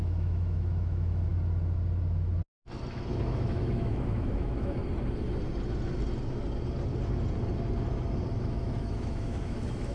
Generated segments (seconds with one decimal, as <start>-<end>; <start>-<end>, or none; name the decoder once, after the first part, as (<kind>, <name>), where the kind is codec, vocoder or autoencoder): 0.0-1.3 (autoencoder, DAC-VAE); 2.9-4.8; 8.4-9.9